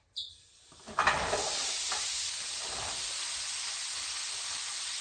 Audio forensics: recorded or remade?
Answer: remade